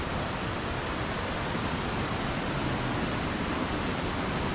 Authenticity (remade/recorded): recorded